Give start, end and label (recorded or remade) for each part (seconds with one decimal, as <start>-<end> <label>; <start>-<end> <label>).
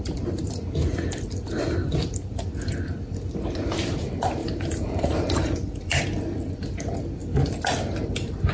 0.0-0.9 recorded; 0.9-2.5 remade; 2.5-4.4 recorded; 4.4-6.0 remade; 6.0-8.5 recorded